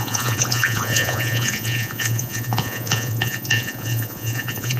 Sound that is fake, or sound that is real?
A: fake